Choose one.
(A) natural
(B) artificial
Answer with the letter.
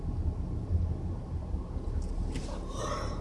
A